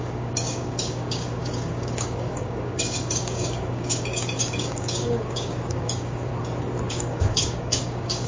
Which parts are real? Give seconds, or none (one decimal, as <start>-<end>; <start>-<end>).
6.3-6.9